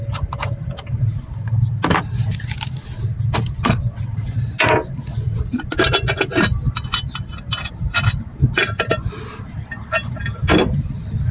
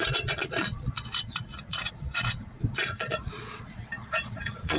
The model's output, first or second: second